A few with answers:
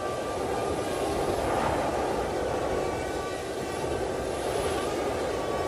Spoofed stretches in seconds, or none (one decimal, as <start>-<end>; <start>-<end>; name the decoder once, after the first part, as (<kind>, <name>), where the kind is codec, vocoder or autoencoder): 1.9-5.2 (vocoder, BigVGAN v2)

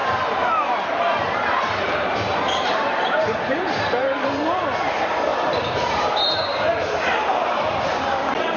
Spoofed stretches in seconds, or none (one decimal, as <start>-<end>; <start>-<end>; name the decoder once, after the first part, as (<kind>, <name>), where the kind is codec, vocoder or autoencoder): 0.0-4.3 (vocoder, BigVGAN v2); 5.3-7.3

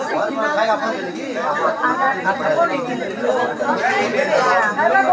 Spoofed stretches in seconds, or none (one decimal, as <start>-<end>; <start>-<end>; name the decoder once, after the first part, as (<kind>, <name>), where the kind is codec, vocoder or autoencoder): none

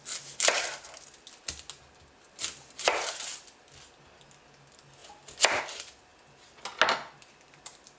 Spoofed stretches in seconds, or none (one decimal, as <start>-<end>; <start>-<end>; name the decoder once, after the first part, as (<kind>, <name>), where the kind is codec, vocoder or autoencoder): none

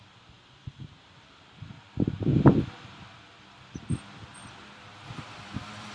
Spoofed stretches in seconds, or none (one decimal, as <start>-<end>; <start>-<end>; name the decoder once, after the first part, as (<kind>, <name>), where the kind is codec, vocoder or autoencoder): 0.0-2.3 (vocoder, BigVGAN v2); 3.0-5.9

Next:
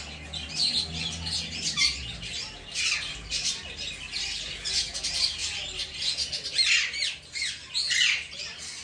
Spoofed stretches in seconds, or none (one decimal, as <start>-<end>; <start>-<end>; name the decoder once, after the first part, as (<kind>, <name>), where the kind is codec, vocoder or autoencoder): none